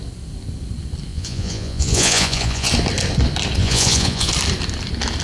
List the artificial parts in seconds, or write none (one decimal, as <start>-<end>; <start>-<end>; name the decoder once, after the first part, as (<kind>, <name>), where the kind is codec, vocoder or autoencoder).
1.1-2.7 (vocoder, Vocos); 3.6-4.3